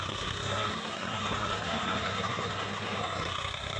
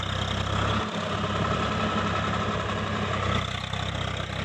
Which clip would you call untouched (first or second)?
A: second